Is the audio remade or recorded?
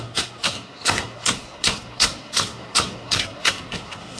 remade